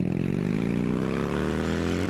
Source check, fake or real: real